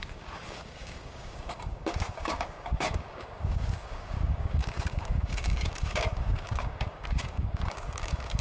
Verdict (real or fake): fake